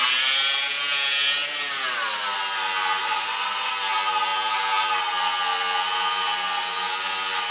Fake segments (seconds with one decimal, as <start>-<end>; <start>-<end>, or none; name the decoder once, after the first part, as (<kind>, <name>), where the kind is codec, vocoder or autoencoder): 3.0-3.7 (vocoder, Vocos)